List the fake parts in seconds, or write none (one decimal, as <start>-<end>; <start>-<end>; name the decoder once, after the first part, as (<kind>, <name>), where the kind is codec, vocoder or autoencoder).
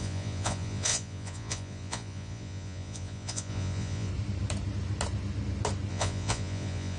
0.0-4.1 (vocoder, Vocos); 5.9-7.0